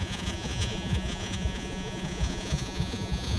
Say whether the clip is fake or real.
fake